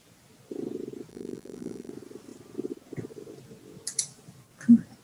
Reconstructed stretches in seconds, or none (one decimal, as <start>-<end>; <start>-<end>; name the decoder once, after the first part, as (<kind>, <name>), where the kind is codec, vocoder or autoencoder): 1.1-1.9 (vocoder, BigVGAN v2)